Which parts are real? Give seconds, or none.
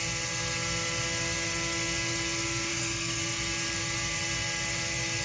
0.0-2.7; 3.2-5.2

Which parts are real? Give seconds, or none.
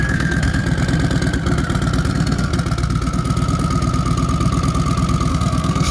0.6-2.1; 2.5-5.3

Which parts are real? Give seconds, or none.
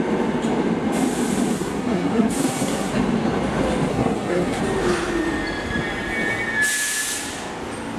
0.0-1.5; 2.9-3.9; 4.6-8.0